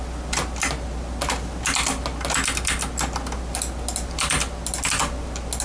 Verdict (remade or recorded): recorded